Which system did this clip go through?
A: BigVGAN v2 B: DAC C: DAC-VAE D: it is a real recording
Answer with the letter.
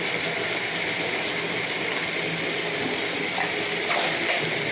D